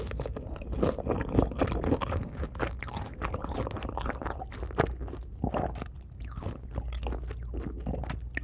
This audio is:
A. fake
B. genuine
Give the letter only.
B